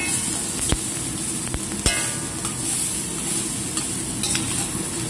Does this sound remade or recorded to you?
recorded